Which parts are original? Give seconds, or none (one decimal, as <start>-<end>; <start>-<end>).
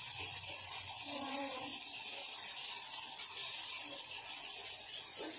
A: 1.7-4.0